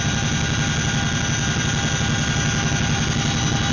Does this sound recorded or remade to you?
recorded